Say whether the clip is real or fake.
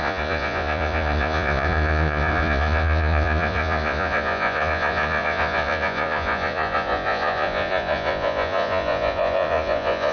fake